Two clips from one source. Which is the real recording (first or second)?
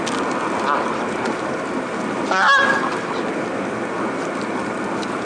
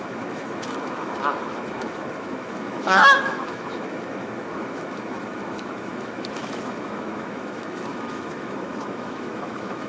first